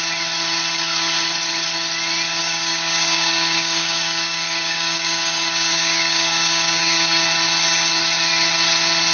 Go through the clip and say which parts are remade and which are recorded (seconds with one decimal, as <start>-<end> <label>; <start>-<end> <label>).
0.0-2.4 recorded; 2.4-7.2 remade; 7.2-9.1 recorded